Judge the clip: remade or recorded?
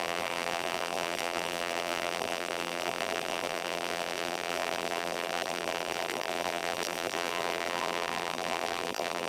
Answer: remade